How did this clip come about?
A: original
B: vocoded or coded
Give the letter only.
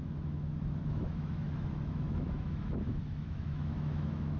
B